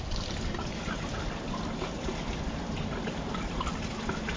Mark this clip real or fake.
real